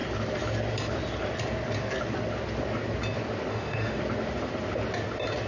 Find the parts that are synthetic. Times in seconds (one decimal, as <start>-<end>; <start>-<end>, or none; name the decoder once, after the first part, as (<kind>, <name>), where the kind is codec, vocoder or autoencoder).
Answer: 3.5-4.0 (autoencoder, DAC-VAE)